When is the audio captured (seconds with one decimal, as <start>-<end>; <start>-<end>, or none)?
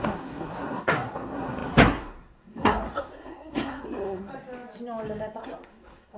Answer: 4.3-5.4